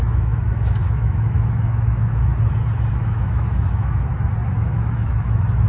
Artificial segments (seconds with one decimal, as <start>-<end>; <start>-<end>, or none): 0.0-2.3; 2.9-4.1; 4.6-5.7